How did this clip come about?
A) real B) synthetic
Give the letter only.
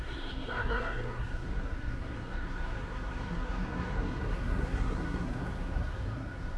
B